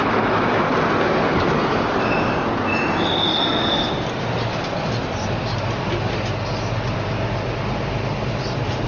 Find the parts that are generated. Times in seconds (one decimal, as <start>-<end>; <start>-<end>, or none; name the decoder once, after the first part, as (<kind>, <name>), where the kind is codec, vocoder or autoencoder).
0.0-0.6 (autoencoder, DAC-VAE)